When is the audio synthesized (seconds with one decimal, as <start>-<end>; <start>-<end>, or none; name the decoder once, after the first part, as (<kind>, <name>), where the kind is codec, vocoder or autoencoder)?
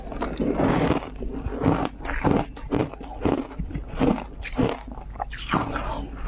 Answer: none